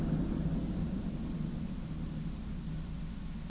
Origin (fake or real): real